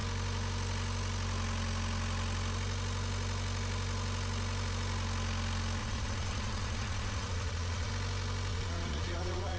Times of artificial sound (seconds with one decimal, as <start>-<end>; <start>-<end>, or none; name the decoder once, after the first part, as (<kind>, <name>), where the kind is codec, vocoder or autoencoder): 5.8-7.9 (vocoder, Vocos); 8.5-9.6